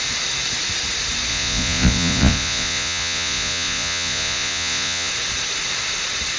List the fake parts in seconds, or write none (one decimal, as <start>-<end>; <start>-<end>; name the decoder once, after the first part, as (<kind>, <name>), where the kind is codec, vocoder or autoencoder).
1.3-5.1 (vocoder, Vocos)